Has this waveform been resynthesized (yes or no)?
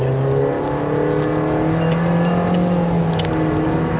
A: no